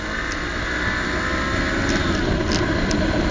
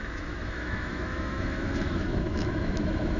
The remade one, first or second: second